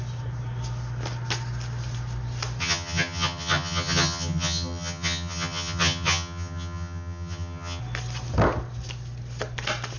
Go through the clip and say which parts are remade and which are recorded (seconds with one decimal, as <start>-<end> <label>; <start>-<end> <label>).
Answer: 0.0-2.6 recorded; 2.6-7.8 remade; 7.8-10.0 recorded